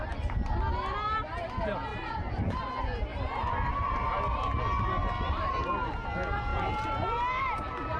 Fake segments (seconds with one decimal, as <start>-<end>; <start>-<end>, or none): 1.9-2.7; 3.1-3.7; 5.0-5.5; 6.5-8.0